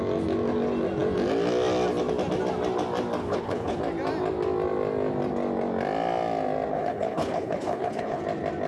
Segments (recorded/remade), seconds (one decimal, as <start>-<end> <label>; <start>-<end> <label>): 0.0-3.2 recorded; 3.2-3.8 remade; 3.8-6.7 recorded; 6.7-8.2 remade; 8.2-8.7 recorded